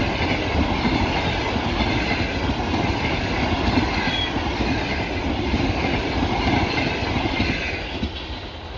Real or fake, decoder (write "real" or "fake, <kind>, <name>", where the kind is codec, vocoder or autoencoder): real